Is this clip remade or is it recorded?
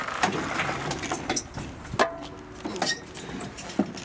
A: recorded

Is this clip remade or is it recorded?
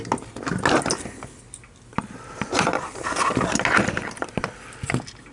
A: recorded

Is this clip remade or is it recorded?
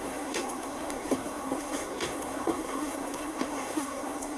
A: remade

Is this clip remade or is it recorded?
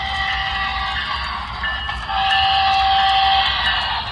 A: recorded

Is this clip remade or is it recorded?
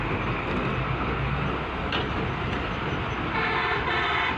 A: recorded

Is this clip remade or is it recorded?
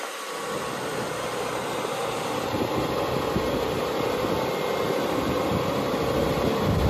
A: recorded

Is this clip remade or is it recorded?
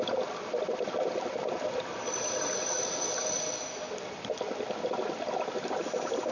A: recorded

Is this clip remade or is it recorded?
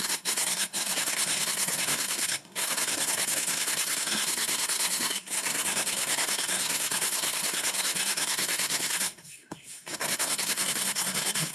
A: remade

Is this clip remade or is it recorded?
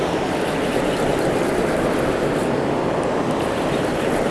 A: recorded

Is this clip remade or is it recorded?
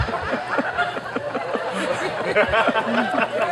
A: recorded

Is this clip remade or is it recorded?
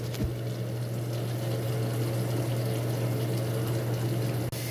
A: recorded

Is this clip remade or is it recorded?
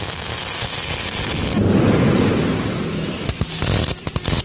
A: recorded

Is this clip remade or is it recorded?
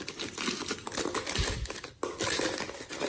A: recorded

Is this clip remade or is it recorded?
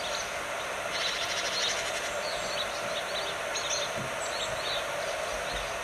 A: recorded